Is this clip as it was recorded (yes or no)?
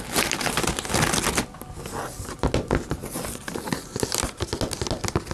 yes